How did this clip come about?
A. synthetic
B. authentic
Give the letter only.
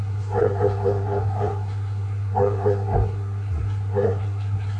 A